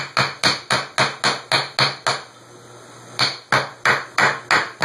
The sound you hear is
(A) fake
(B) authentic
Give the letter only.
B